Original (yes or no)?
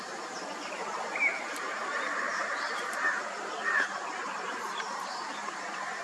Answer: no